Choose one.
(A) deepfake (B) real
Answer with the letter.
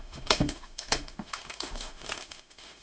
A